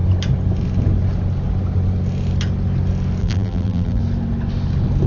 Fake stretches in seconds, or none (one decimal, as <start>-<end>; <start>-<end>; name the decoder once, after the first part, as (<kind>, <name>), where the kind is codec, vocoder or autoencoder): 3.2-4.0 (vocoder, BigVGAN v2)